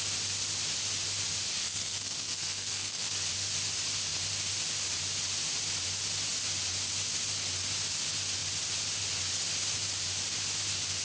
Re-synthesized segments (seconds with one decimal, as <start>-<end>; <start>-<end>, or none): 1.6-3.1